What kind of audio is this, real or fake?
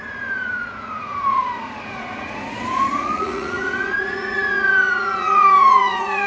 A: fake